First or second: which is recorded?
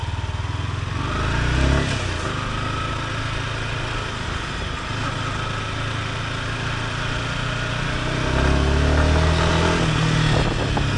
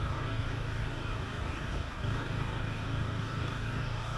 first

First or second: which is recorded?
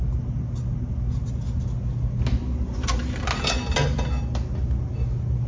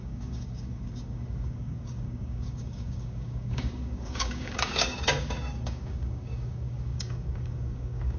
first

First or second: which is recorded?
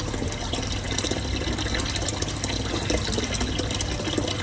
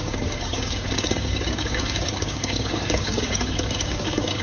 first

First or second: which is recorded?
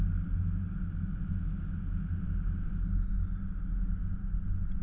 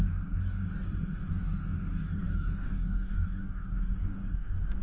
first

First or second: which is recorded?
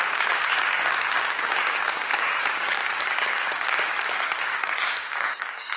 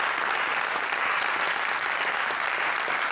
second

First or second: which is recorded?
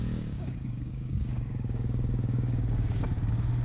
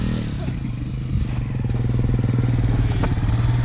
second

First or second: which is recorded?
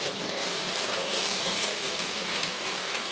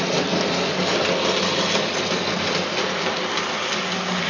second